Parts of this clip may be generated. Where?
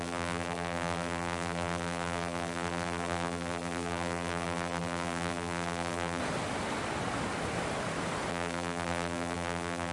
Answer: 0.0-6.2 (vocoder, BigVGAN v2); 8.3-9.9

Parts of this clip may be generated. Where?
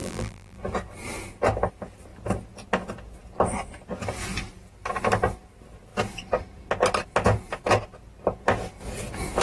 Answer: 0.0-0.6 (vocoder, BigVGAN v2)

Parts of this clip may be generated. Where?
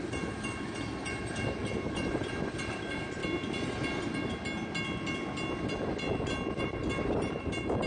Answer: 0.0-3.2 (vocoder, BigVGAN v2); 6.6-7.9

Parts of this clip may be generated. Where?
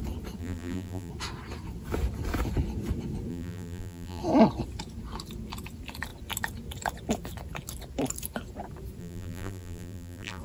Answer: 0.4-1.1 (vocoder, BigVGAN v2); 3.3-4.2; 9.0-10.4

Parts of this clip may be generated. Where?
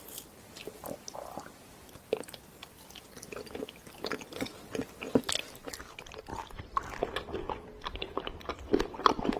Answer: 0.0-4.5 (vocoder, BigVGAN v2); 5.2-6.3; 7.5-9.4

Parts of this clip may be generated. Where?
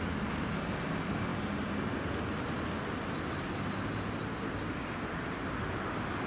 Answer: none